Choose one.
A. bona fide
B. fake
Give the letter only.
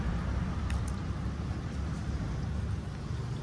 B